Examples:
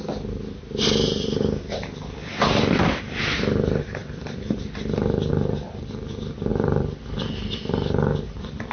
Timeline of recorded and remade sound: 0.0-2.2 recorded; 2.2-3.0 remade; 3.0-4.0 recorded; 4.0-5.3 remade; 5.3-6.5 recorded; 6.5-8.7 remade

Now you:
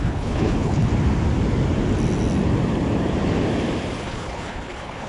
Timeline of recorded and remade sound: 0.0-0.9 remade; 0.9-4.0 recorded; 4.0-5.1 remade

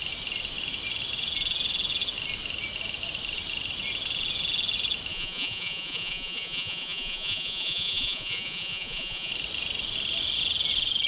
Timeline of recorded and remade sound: 0.0-5.1 recorded; 5.1-9.3 remade; 9.3-11.1 recorded

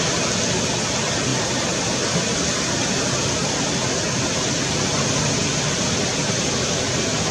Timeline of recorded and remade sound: 0.0-7.3 recorded

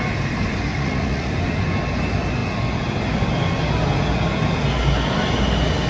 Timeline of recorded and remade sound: 0.0-0.7 recorded; 0.7-1.3 remade; 1.3-5.9 recorded

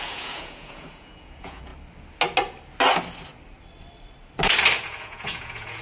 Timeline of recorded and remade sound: 0.0-1.7 remade; 1.7-4.8 recorded; 4.8-5.8 remade